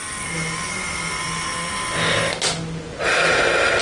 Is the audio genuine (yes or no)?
yes